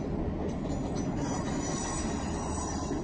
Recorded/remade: recorded